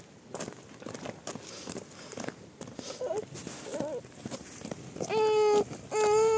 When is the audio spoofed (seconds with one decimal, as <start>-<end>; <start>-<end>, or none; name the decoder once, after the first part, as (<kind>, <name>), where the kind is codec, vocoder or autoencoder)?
none